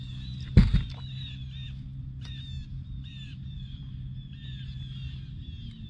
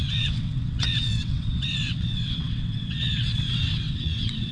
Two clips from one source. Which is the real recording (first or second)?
first